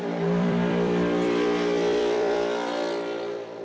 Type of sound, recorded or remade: remade